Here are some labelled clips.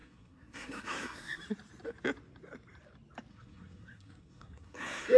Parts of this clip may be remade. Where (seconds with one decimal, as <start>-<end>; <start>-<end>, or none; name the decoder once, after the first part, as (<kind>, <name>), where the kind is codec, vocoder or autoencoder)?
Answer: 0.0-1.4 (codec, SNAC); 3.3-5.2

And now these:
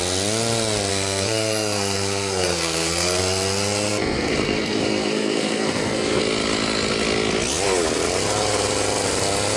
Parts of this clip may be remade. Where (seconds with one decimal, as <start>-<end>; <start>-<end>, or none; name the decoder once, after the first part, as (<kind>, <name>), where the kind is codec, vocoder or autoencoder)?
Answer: 0.9-3.2 (codec, SNAC); 3.9-6.2

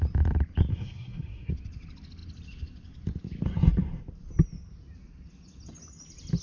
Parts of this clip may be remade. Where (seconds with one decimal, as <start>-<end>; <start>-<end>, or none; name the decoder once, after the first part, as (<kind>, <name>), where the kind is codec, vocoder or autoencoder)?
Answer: 0.7-1.5 (codec, SNAC)